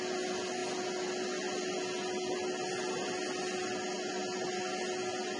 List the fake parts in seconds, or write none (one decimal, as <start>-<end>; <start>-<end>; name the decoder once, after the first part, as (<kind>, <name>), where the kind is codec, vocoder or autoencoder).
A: none